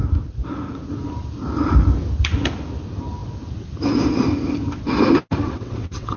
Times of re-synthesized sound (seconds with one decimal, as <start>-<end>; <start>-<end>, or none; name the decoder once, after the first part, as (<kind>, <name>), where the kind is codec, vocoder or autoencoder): 5.4-6.2 (vocoder, WaveNeXt)